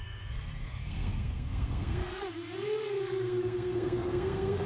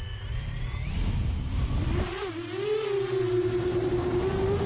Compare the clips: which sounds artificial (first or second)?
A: first